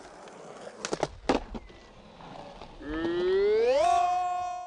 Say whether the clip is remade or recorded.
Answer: recorded